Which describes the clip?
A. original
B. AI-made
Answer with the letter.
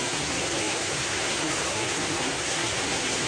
B